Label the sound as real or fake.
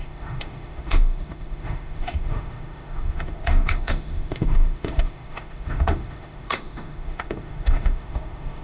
fake